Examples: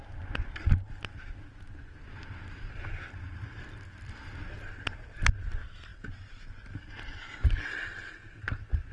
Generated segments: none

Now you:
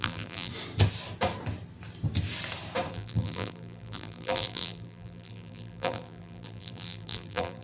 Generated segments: 0.0-0.5; 2.9-7.6

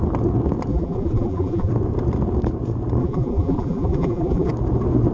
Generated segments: 0.7-1.7; 3.0-4.5

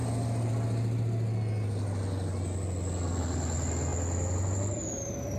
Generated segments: 3.2-3.9

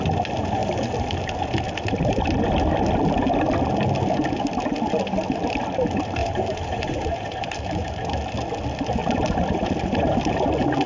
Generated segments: 6.2-7.9